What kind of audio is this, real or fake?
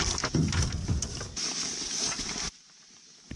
real